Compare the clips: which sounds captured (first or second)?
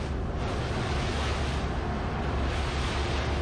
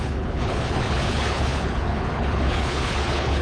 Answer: first